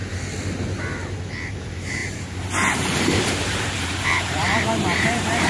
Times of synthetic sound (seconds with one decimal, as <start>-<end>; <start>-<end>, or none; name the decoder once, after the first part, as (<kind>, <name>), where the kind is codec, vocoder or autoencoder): 1.5-5.5 (vocoder, BigVGAN v2)